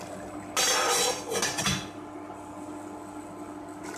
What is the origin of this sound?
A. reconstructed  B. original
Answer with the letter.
B